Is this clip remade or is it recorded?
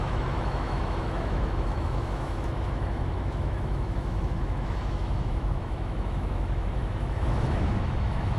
remade